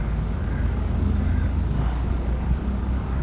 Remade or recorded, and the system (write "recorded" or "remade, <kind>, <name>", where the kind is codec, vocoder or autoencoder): remade, codec, DAC